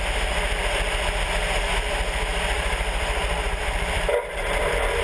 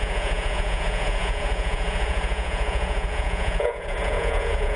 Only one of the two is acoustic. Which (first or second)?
first